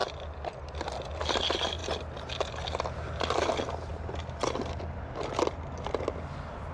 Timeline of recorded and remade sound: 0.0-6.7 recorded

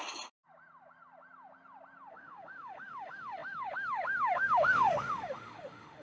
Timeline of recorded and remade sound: 0.0-2.1 recorded; 2.1-6.0 remade

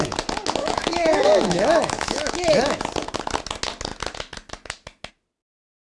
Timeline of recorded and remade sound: 0.0-0.6 recorded; 0.6-2.8 remade; 2.8-6.0 recorded

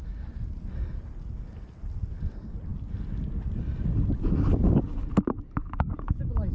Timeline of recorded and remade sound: 0.0-6.5 recorded

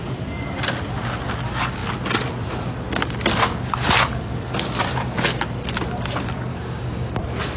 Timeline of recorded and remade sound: 0.0-6.5 recorded; 6.5-7.1 remade; 7.1-7.6 recorded

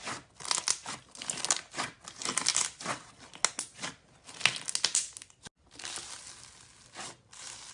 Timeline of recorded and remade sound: 0.0-7.7 recorded

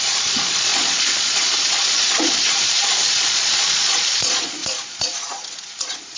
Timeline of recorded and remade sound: 0.0-6.2 remade